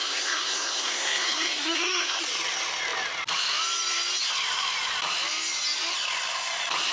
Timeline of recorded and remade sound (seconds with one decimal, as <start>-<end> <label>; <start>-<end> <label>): 0.0-2.2 remade; 2.2-6.9 recorded